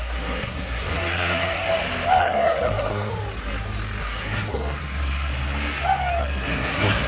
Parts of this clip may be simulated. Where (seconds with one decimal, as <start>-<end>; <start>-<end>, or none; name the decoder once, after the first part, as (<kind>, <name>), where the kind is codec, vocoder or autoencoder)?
0.0-1.7 (codec, SNAC); 2.2-3.1; 4.0-5.3; 6.2-7.1